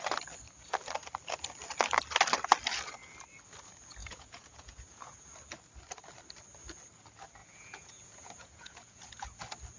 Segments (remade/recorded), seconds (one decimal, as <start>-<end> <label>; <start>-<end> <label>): 0.0-4.0 recorded; 4.0-5.3 remade; 5.3-7.4 recorded; 7.4-9.4 remade; 9.4-9.8 recorded